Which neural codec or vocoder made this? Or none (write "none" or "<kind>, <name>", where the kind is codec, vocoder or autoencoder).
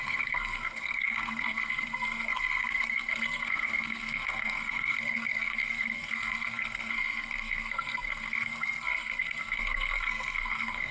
codec, SNAC